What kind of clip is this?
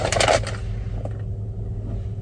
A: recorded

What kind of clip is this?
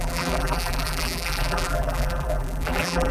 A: remade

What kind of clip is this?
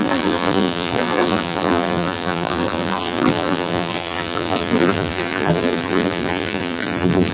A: remade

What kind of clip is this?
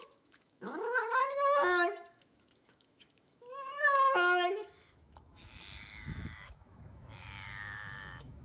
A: remade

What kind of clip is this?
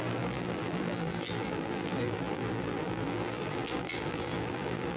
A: remade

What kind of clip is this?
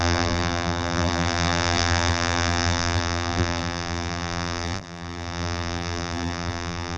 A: remade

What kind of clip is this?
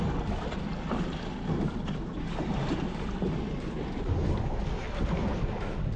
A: recorded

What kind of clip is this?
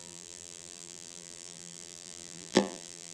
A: remade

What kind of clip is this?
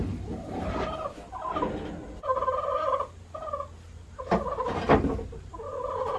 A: recorded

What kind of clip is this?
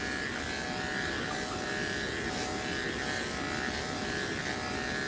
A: recorded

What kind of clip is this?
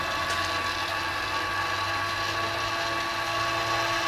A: recorded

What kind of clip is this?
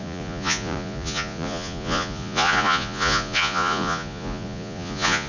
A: remade